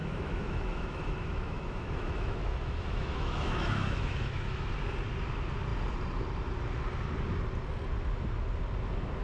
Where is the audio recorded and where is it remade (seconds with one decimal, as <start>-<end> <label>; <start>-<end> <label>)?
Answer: 0.0-4.7 remade; 4.7-9.2 recorded